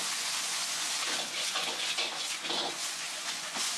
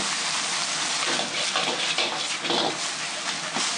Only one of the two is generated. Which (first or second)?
first